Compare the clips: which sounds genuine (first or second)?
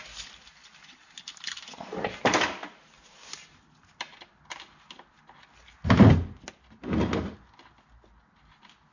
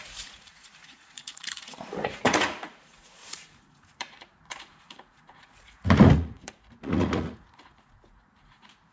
first